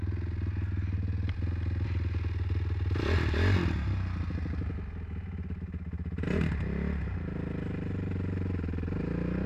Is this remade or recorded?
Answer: recorded